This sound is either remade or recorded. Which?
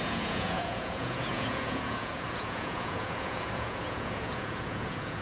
remade